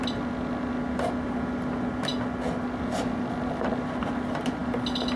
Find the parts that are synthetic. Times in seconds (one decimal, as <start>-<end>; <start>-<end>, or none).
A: none